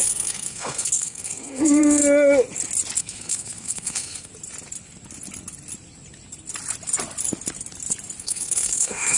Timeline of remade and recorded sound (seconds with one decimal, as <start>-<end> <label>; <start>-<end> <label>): 0.0-2.0 remade; 2.0-3.0 recorded; 3.0-4.3 remade; 4.3-8.2 recorded; 8.2-9.2 remade